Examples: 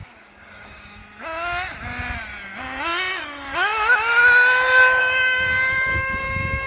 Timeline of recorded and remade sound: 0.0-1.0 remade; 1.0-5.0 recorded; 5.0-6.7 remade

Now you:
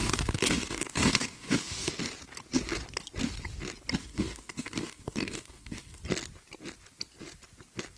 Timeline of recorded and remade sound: 0.0-1.9 remade; 1.9-4.0 recorded; 4.0-6.0 remade; 6.0-8.0 recorded

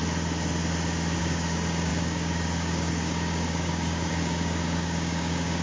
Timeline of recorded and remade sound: 0.0-1.2 recorded; 1.2-5.6 remade

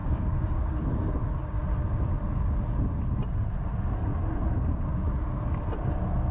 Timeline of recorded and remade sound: 0.0-1.1 remade; 1.1-4.9 recorded; 4.9-5.6 remade; 5.6-6.3 recorded

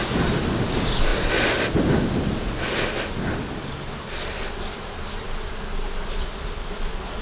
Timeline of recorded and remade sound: 0.0-7.2 recorded

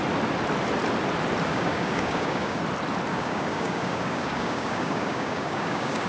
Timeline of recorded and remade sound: 0.0-1.5 recorded; 1.5-2.6 remade; 2.6-3.1 recorded; 3.1-6.1 remade

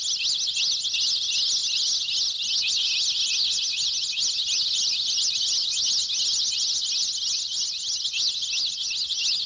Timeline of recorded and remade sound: 0.0-9.5 recorded

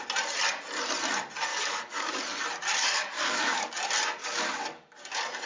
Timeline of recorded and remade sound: 0.0-1.5 recorded; 1.5-2.2 remade; 2.2-2.8 recorded; 2.8-3.7 remade; 3.7-4.2 recorded; 4.2-5.0 remade; 5.0-5.5 recorded